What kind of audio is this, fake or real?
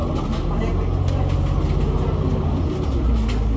real